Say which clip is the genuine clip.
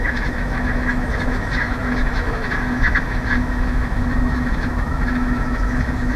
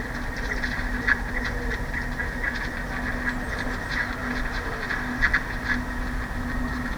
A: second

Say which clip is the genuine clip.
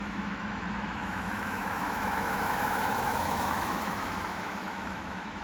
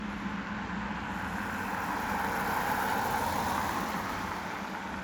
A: second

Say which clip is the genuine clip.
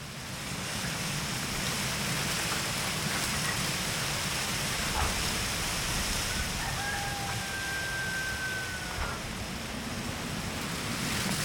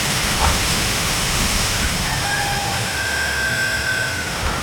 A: first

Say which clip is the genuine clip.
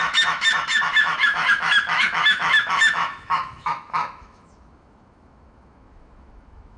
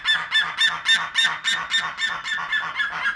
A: second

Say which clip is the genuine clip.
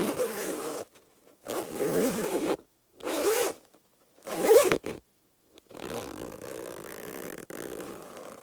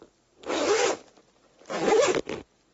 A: second